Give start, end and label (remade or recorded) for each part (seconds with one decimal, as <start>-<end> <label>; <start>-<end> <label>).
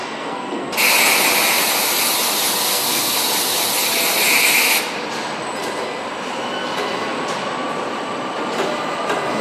0.0-0.7 remade; 0.7-2.7 recorded; 2.7-3.2 remade; 3.2-9.4 recorded